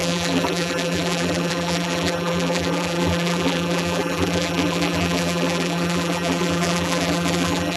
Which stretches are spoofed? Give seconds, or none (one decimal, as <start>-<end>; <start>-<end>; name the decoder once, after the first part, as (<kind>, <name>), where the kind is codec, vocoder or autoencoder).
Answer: 0.0-7.8 (vocoder, BigVGAN v2)